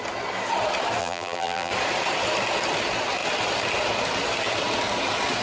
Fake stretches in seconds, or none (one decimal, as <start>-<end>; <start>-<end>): 1.0-1.7